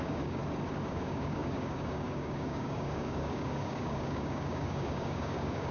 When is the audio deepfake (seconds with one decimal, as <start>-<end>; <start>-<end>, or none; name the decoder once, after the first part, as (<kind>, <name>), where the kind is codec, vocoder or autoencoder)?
0.0-0.4 (codec, DAC); 0.9-5.7